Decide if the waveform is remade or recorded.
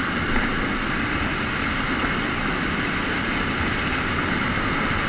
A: recorded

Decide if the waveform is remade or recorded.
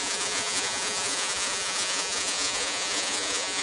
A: remade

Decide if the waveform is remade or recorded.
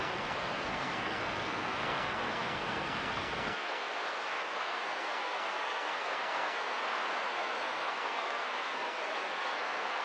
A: remade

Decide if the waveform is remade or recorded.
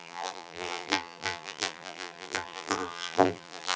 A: remade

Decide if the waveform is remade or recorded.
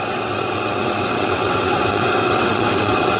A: remade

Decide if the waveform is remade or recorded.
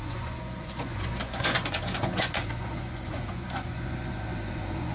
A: remade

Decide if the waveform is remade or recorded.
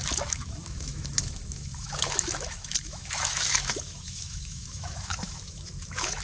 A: remade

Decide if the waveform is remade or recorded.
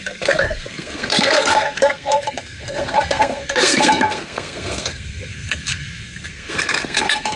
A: remade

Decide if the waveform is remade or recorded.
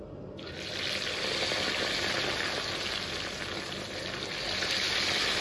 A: recorded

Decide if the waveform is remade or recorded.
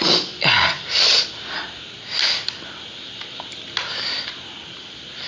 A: recorded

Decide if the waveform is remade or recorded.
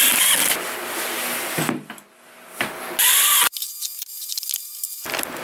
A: recorded